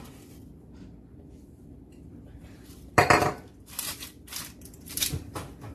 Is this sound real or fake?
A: fake